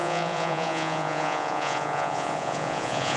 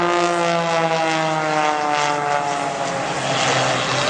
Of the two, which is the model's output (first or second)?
first